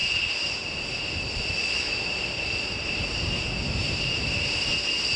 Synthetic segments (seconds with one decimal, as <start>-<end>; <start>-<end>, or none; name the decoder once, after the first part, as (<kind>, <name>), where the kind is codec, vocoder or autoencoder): 0.0-3.1 (vocoder, BigVGAN v2); 3.8-4.7